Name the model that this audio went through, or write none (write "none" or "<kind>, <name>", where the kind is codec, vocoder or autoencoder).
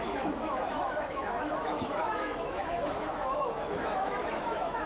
autoencoder, DAC-VAE